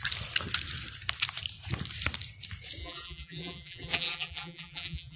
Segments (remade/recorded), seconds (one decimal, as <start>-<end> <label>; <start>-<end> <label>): 0.0-2.8 recorded; 2.8-5.2 remade